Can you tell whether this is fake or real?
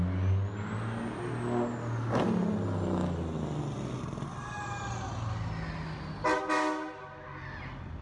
real